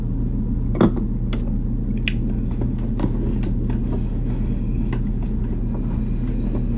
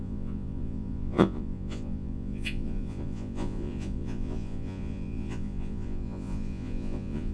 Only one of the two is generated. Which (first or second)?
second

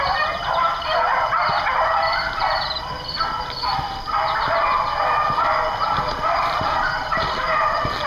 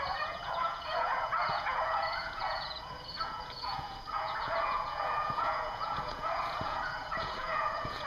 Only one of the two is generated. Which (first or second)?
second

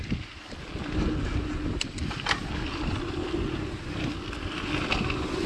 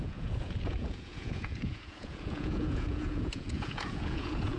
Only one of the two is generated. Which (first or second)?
second